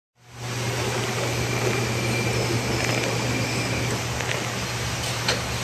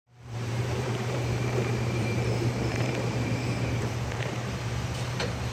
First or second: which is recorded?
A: first